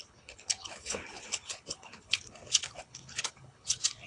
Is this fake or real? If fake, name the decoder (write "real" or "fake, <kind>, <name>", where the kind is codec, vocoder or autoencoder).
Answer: fake, codec, HILCodec